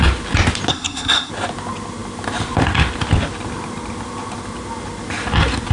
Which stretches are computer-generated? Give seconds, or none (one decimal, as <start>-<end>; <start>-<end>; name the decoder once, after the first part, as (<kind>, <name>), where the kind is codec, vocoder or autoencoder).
0.7-1.3 (codec, SNAC)